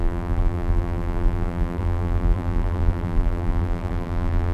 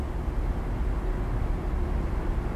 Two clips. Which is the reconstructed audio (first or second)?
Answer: first